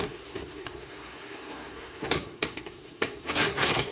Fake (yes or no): yes